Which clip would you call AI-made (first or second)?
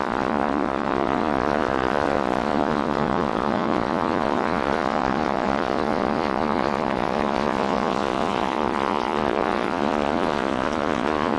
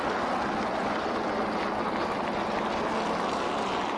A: first